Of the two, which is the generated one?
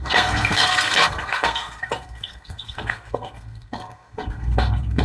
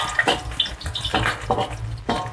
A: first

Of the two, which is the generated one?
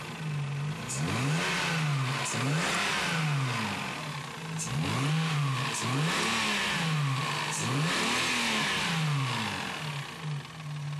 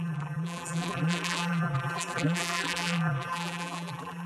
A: second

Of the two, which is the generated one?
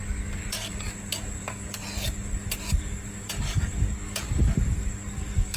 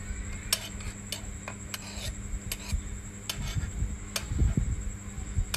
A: first